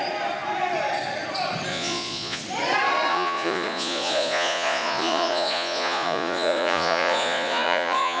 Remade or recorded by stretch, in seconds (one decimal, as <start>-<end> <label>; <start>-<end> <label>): 0.0-1.7 recorded; 1.7-2.4 remade; 2.4-3.1 recorded; 3.1-8.2 remade